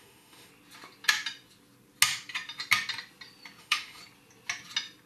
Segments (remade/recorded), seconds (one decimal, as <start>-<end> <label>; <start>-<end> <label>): 0.0-0.5 remade; 0.5-3.6 recorded; 3.6-4.0 remade; 4.0-5.1 recorded